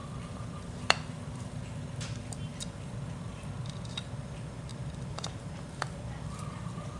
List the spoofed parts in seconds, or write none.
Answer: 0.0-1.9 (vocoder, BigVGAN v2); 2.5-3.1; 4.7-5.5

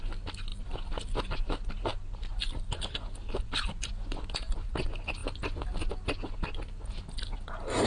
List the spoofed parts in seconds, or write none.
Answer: 0.5-1.3 (vocoder, BigVGAN v2); 1.9-3.9

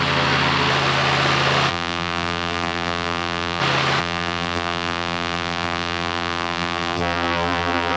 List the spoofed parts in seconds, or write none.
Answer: 1.7-3.6 (vocoder, BigVGAN v2); 4.0-8.0

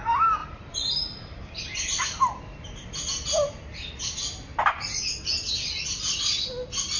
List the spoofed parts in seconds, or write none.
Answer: 0.4-1.5 (vocoder, BigVGAN v2)